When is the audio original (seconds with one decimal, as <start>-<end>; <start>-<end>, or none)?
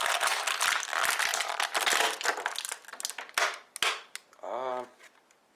0.0-5.6